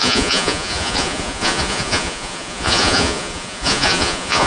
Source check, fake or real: fake